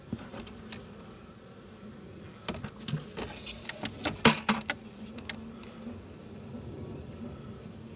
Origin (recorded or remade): recorded